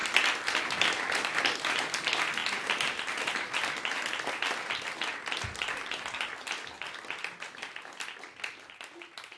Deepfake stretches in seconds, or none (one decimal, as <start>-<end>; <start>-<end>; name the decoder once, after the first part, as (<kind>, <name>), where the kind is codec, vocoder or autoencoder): none